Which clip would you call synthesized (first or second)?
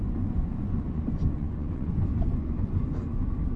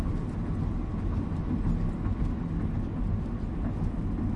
first